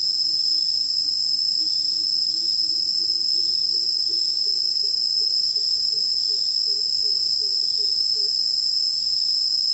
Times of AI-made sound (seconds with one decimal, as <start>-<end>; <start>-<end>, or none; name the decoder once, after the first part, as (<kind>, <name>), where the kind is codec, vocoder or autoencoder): 0.6-1.6 (vocoder, Vocos); 2.7-6.2